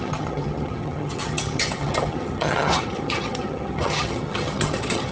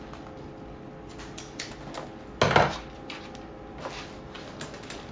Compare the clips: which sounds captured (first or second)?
second